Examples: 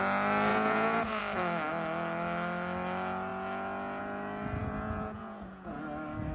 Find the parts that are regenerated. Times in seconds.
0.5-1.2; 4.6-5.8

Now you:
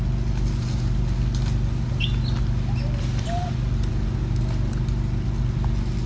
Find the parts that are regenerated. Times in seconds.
none

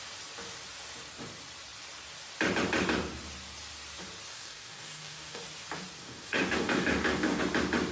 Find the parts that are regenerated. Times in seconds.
4.3-5.4; 6.0-7.4

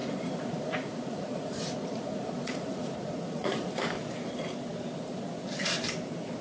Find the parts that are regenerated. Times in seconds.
0.0-3.8

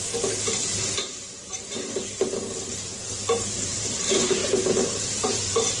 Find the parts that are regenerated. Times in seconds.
0.0-1.5; 2.6-5.8

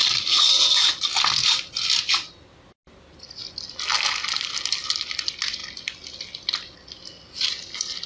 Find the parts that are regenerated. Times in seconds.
0.0-0.9